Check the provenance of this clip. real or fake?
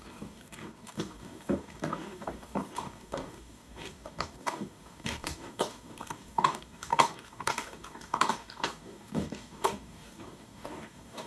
fake